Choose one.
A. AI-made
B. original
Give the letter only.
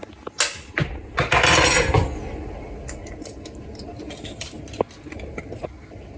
B